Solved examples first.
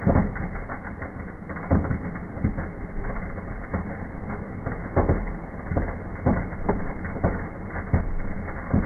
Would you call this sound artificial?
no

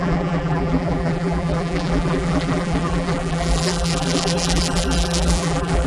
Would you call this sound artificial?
yes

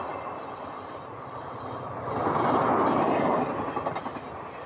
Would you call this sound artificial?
no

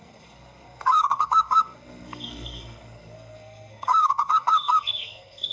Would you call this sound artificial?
yes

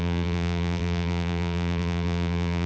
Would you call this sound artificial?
yes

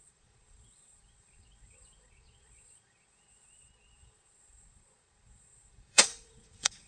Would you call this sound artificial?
yes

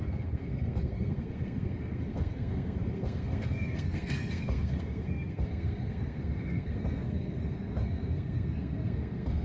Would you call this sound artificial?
yes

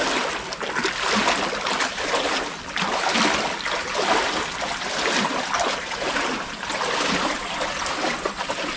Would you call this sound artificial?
no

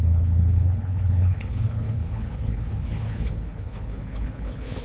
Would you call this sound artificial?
yes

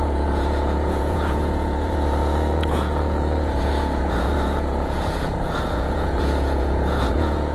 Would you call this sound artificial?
yes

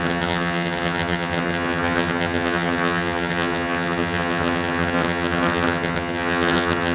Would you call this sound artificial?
yes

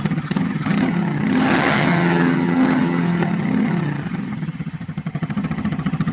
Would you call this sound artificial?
yes